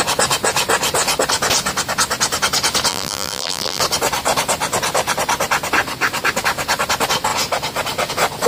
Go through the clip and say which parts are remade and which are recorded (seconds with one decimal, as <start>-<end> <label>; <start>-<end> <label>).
0.0-2.9 recorded; 2.9-3.8 remade; 3.8-8.5 recorded